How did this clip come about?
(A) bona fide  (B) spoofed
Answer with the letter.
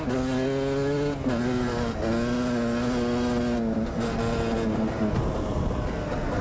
A